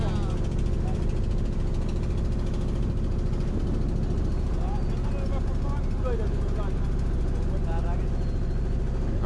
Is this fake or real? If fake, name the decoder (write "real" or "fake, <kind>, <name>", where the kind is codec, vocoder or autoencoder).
real